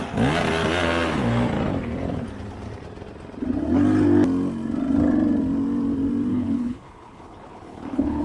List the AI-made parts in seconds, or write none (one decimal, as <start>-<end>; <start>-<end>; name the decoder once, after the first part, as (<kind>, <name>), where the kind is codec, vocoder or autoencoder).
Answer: 6.3-8.2 (codec, HILCodec)